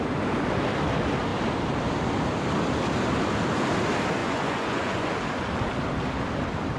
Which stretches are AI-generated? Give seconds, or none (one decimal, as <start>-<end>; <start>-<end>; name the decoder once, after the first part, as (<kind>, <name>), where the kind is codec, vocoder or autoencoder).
4.2-5.1 (vocoder, Vocos)